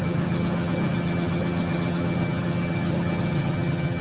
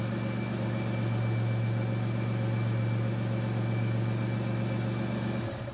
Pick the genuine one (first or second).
second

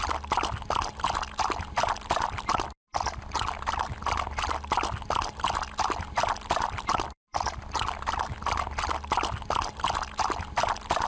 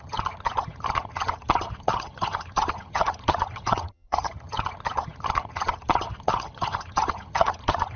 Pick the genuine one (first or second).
first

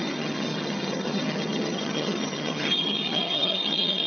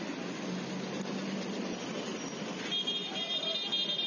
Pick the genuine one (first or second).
second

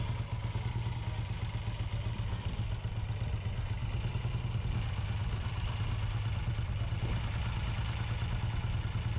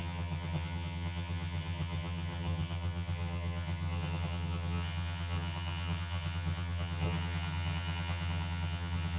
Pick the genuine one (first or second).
first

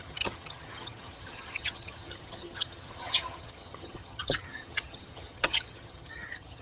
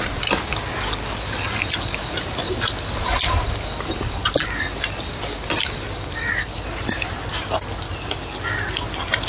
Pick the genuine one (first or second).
second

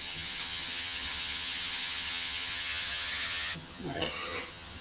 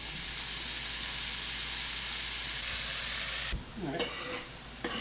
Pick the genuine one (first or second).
second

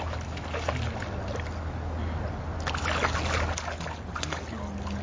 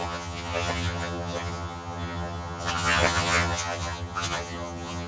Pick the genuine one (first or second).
first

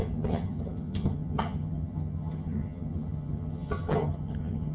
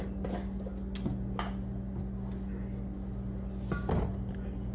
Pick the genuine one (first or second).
second